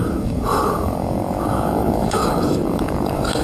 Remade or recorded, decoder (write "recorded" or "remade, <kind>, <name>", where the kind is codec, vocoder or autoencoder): remade, codec, DAC